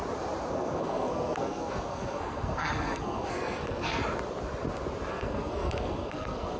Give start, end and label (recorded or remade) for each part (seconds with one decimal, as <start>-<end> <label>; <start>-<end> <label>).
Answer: 0.0-0.5 recorded; 0.5-4.0 remade; 4.0-5.1 recorded; 5.1-6.6 remade